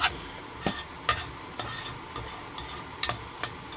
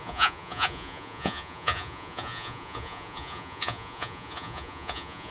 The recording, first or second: first